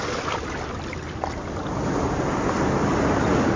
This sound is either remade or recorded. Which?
recorded